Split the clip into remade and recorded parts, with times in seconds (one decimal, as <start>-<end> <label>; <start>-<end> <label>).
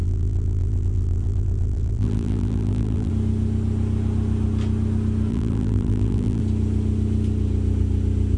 0.0-3.1 remade; 3.1-5.3 recorded; 5.3-6.4 remade; 6.4-8.4 recorded